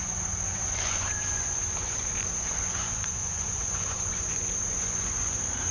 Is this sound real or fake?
fake